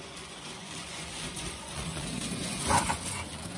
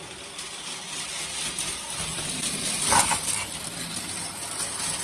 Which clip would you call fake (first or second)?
first